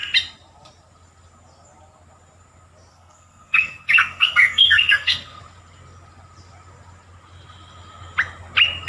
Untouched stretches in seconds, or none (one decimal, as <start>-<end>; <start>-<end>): 0.0-2.9; 5.4-8.9